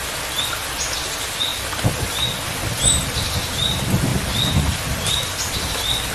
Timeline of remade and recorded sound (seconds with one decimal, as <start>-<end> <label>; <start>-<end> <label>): 0.0-1.5 recorded; 1.5-2.8 remade; 2.8-4.1 recorded; 4.1-4.9 remade; 4.9-6.1 recorded